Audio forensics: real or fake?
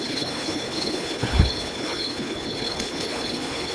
fake